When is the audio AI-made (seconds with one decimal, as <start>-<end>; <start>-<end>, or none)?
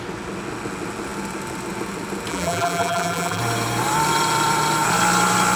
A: 2.3-3.4